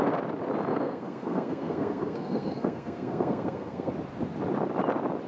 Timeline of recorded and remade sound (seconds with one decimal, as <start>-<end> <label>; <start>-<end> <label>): 0.0-0.7 recorded; 0.7-3.9 remade; 3.9-5.3 recorded